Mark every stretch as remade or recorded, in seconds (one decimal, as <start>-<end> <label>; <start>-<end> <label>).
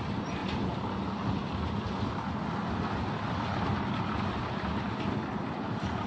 0.0-6.1 recorded